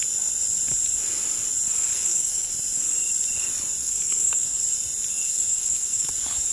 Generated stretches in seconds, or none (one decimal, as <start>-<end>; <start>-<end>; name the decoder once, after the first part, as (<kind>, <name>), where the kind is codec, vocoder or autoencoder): 1.9-2.5 (codec, SNAC); 3.8-4.6; 5.1-6.1

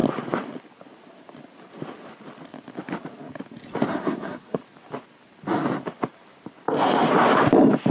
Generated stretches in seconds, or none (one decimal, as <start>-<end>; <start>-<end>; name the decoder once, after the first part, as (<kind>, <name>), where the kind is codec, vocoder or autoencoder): 3.9-4.6 (codec, SNAC)

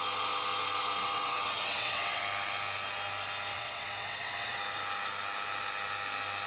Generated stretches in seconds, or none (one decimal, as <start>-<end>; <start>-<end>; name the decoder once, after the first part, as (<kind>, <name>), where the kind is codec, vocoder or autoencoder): 1.0-2.2 (vocoder, WaveNeXt); 3.5-4.6

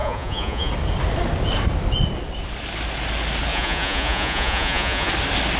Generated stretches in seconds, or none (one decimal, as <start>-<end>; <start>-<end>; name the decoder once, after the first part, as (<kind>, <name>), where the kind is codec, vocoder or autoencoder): 0.0-0.7 (vocoder, Vocos); 3.5-5.1

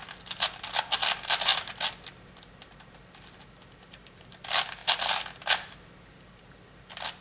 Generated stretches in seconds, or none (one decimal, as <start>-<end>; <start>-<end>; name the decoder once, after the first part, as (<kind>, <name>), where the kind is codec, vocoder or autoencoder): none

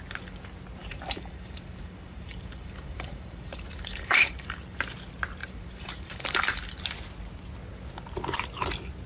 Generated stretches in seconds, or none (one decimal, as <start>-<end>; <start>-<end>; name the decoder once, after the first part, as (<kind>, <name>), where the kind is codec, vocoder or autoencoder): 0.8-4.8 (vocoder, BigVGAN v2); 5.4-6.8

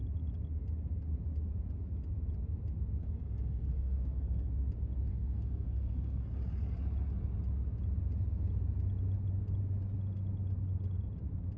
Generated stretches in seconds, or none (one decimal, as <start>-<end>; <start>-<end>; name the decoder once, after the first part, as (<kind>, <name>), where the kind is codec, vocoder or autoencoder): 3.0-4.5 (codec, SNAC); 5.1-6.3